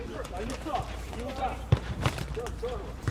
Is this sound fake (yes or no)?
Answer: yes